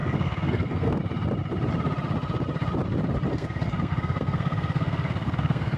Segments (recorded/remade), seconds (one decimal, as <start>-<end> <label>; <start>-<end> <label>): 0.0-0.9 remade; 0.9-3.3 recorded; 3.3-5.8 remade